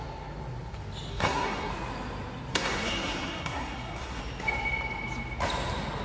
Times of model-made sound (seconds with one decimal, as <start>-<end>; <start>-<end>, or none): 1.1-1.7; 2.5-4.2